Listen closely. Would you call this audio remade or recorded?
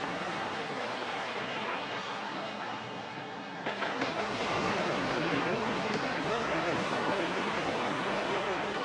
remade